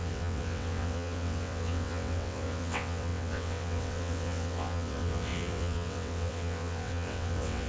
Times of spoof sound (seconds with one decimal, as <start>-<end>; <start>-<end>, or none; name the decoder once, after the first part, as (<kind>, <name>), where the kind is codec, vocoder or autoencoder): 0.0-7.7 (vocoder, WaveNeXt)